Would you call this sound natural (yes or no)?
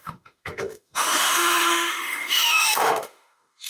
no